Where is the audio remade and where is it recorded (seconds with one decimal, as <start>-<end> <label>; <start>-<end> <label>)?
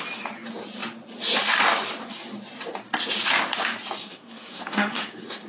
0.0-4.0 recorded; 4.0-5.5 remade